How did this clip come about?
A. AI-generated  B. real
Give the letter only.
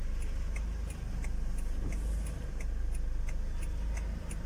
B